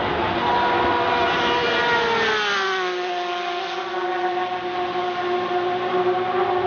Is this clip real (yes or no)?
yes